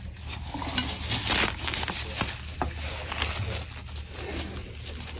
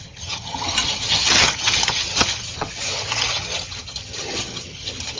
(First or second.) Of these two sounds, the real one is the first